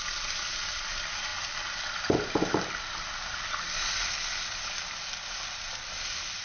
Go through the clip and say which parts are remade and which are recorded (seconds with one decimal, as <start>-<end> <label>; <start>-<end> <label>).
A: 0.0-6.4 recorded

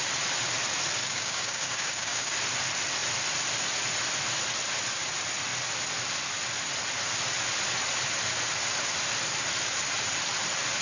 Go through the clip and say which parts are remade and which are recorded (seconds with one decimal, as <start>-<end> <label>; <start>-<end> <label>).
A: 0.0-1.0 recorded; 1.0-2.4 remade; 2.4-10.8 recorded

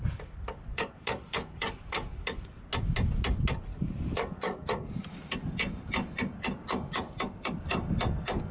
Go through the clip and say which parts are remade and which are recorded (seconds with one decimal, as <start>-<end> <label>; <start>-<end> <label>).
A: 0.0-0.7 recorded; 0.7-2.6 remade; 2.6-3.7 recorded; 3.7-4.9 remade; 4.9-8.5 recorded